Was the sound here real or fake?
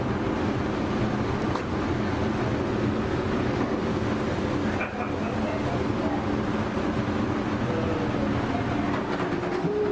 real